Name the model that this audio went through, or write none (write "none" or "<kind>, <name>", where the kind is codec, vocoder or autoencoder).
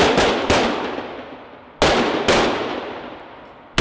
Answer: none